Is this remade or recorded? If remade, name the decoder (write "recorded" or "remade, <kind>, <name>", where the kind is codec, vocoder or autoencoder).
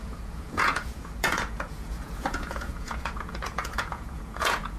remade, vocoder, Vocos